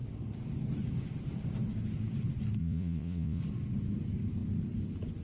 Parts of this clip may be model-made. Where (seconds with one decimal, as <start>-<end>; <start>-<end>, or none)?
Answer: 2.6-3.4